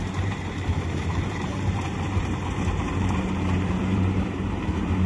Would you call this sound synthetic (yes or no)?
yes